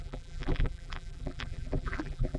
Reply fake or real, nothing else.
fake